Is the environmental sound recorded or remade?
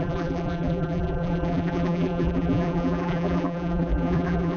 remade